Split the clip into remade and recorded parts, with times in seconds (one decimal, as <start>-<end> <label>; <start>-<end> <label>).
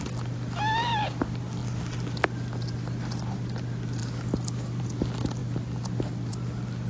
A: 0.0-6.9 recorded